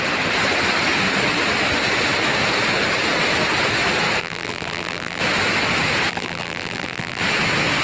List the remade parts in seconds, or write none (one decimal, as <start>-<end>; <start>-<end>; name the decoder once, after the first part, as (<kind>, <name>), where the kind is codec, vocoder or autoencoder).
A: 4.2-5.2 (vocoder, BigVGAN v2); 6.1-7.2